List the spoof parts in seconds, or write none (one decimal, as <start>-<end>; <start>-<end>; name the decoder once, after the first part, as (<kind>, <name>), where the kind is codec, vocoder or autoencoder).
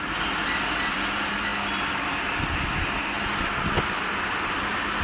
none